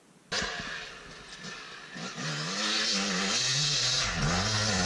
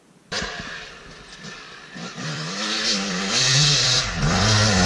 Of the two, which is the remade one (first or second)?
second